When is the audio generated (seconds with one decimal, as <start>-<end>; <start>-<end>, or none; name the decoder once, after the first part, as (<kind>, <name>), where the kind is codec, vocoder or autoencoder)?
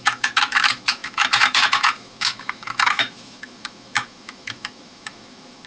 0.0-5.7 (autoencoder, DAC-VAE)